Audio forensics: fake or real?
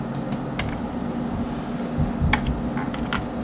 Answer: real